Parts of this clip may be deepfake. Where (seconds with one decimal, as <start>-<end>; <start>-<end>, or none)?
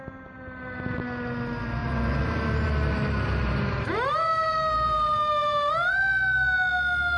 1.8-6.0